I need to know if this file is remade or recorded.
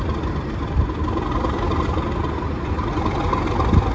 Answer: recorded